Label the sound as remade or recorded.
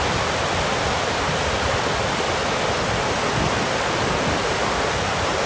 recorded